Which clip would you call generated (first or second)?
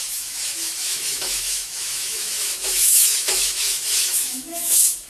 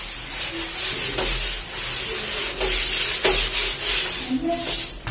first